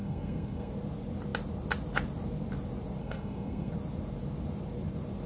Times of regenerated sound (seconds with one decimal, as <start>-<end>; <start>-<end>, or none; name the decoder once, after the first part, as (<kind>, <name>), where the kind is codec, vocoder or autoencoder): 0.0-0.7 (codec, SNAC); 3.0-3.7